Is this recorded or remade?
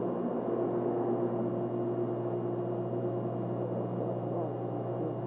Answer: recorded